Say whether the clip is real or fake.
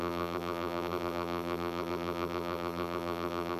fake